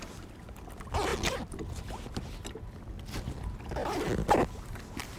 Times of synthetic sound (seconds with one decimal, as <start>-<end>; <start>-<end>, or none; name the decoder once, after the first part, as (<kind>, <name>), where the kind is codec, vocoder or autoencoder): 1.1-2.2 (vocoder, BigVGAN v2); 3.8-5.2